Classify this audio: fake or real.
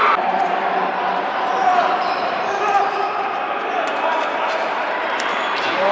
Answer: fake